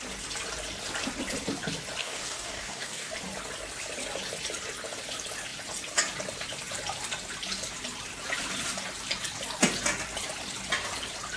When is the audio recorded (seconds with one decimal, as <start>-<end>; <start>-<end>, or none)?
0.0-2.0; 3.1-11.4